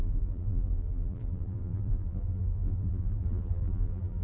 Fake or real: fake